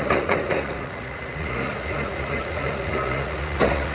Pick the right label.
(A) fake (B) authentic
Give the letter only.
A